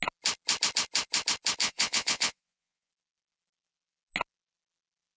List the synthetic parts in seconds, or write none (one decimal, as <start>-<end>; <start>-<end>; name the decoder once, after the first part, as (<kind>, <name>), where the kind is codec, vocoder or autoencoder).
1.6-2.9 (vocoder, Vocos)